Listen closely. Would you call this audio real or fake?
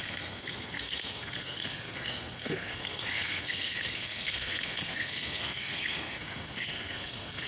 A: fake